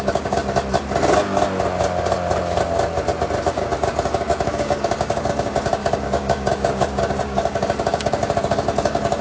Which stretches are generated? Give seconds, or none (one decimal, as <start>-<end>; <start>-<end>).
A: 0.0-0.4; 3.5-9.2